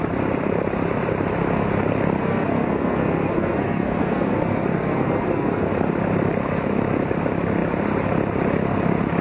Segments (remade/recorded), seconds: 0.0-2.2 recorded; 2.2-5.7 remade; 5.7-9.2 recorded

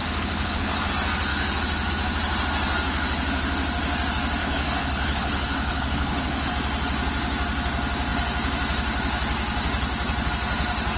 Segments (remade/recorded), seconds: 0.0-0.9 remade; 0.9-4.4 recorded; 4.4-6.5 remade; 6.5-11.0 recorded

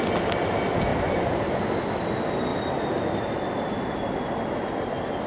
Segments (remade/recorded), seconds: 0.0-0.9 recorded; 0.9-1.6 remade; 1.6-2.5 recorded; 2.5-3.5 remade; 3.5-5.3 recorded

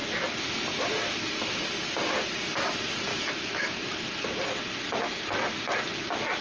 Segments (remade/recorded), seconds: 0.0-3.1 recorded; 3.1-3.8 remade; 3.8-6.4 recorded

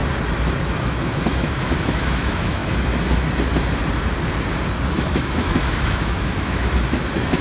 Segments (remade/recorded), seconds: 0.0-0.6 recorded; 0.6-2.6 remade; 2.6-4.9 recorded; 4.9-7.4 remade

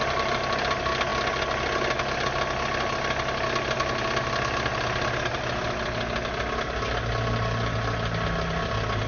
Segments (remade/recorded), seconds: 0.0-9.1 recorded

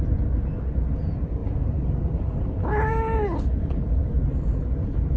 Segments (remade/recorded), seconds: 0.0-5.2 recorded

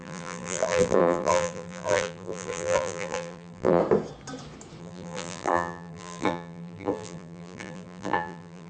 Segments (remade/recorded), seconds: 0.0-3.8 remade; 3.8-4.8 recorded; 4.8-8.7 remade